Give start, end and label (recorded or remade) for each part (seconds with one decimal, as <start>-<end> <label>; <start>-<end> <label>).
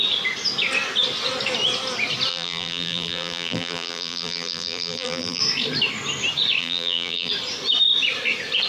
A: 0.0-2.3 recorded; 2.3-5.4 remade; 5.4-6.6 recorded; 6.6-7.3 remade; 7.3-8.7 recorded